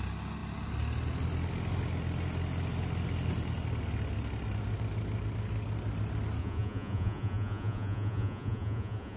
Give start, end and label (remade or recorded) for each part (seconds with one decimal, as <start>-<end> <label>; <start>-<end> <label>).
0.0-6.4 recorded; 6.4-9.2 remade